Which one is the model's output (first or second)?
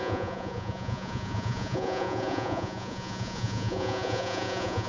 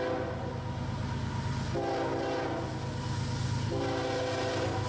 first